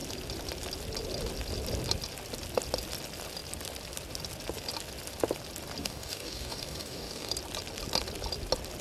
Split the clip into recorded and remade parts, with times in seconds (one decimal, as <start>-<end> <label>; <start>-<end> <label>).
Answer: 0.0-5.8 recorded; 5.8-7.3 remade; 7.3-8.8 recorded